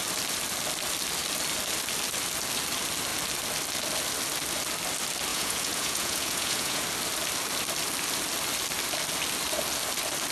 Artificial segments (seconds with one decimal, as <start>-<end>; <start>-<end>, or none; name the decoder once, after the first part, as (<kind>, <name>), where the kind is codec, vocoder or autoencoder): 5.3-6.8 (vocoder, Vocos)